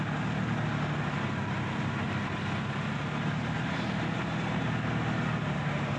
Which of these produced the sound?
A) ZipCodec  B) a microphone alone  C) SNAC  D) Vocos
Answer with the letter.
B